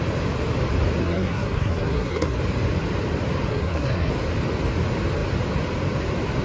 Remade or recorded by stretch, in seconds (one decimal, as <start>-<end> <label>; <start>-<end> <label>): 0.0-1.0 recorded; 1.0-2.4 remade; 2.4-3.5 recorded; 3.5-4.1 remade; 4.1-6.4 recorded